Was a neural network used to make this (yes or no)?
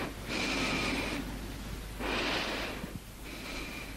no